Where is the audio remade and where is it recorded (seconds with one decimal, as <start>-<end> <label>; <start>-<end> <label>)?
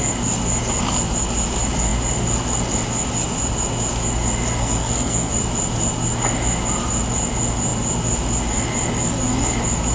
0.0-4.6 recorded; 4.6-5.3 remade; 5.3-9.9 recorded